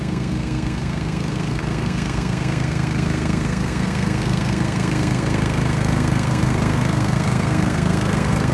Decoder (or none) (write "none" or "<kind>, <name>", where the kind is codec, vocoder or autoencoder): codec, SNAC